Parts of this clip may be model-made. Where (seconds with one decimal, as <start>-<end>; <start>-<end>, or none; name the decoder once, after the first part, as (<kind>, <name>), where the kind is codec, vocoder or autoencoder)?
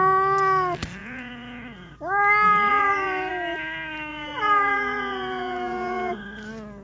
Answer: 1.0-1.9 (vocoder, Vocos); 2.7-3.3; 4.1-6.2